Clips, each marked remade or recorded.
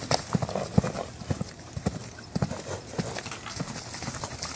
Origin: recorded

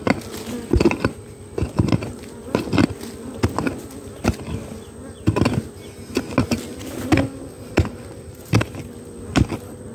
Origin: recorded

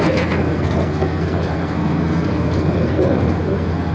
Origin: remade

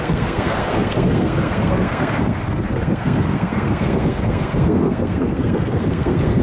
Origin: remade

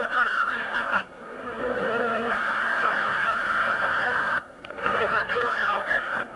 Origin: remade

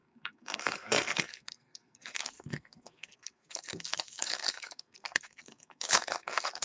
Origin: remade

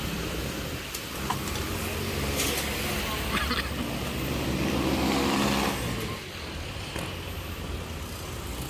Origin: recorded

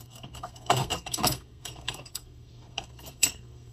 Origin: remade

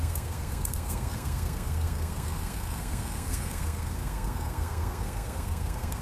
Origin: remade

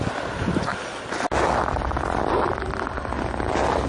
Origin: recorded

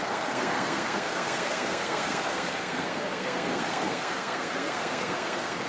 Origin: remade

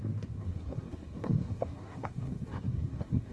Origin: remade